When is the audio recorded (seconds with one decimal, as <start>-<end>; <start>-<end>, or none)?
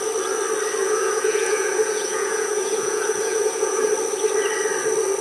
0.0-0.8; 3.9-5.2